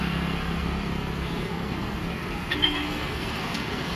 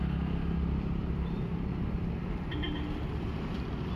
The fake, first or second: first